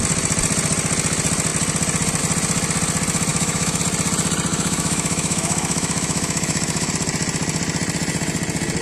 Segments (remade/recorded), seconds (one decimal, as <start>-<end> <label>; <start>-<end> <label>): 0.0-3.3 recorded; 3.3-3.8 remade; 3.8-4.5 recorded; 4.5-6.9 remade; 6.9-8.8 recorded